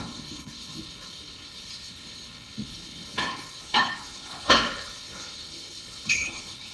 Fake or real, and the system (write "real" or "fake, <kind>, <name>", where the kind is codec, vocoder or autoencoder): fake, codec, HILCodec